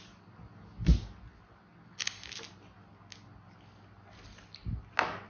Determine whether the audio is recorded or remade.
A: recorded